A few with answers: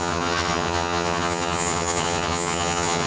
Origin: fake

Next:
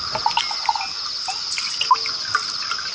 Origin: real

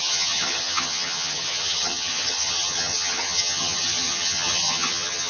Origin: fake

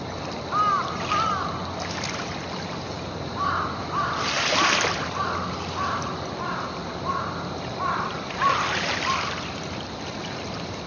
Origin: real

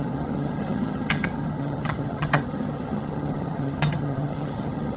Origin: fake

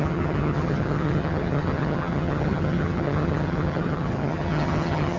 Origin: fake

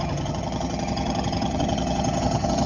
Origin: fake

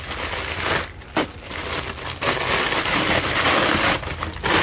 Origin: real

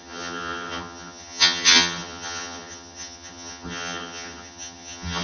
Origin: fake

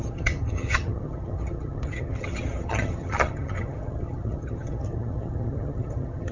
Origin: fake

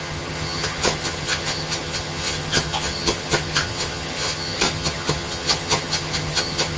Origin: fake